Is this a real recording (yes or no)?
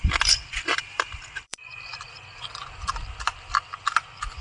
no